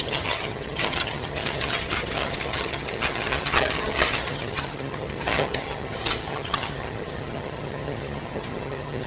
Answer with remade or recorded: remade